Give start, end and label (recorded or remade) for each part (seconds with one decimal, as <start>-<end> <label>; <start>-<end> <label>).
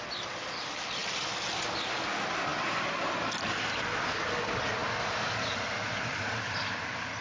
0.0-4.8 recorded; 4.8-6.6 remade; 6.6-7.2 recorded